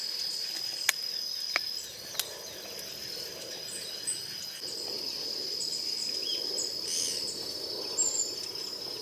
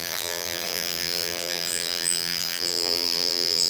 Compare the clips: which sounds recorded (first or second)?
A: first